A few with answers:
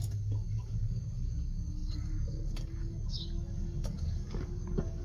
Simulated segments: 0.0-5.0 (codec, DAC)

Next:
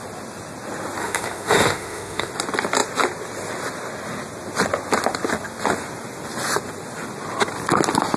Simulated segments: 1.0-2.3 (autoencoder, DAC-VAE)

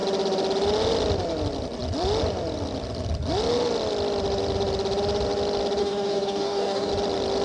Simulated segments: 5.8-6.9 (codec, DAC)

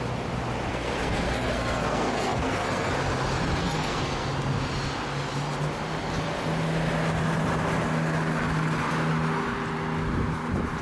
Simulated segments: 0.7-2.9 (codec, SNAC); 3.6-4.3

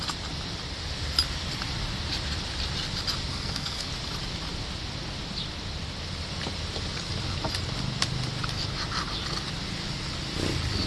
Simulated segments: 3.3-3.9 (codec, SNAC)

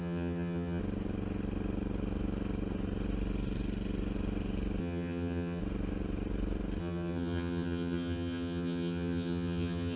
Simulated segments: 0.0-0.8 (vocoder, HiFi-GAN); 4.8-5.6; 6.8-10.0

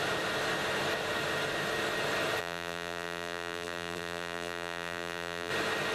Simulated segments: 2.4-5.5 (vocoder, BigVGAN v2)